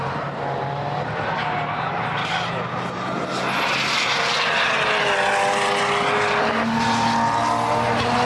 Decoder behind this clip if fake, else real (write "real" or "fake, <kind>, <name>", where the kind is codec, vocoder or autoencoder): real